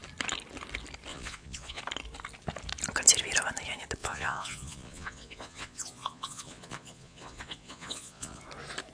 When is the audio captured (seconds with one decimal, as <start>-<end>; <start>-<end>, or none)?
0.0-1.1; 1.8-4.0; 8.4-8.9